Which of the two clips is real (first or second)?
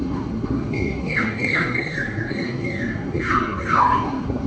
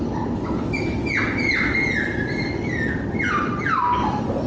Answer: second